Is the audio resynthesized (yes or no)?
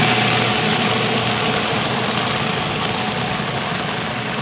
no